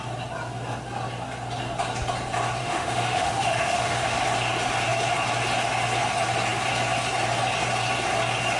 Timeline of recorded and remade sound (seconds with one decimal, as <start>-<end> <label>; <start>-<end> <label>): 0.0-2.6 recorded; 2.6-4.2 remade; 4.2-8.6 recorded